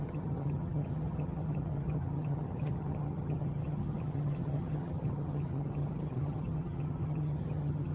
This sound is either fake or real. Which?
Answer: fake